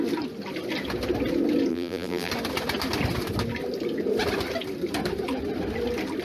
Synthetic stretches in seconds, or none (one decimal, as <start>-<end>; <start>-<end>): 1.7-2.3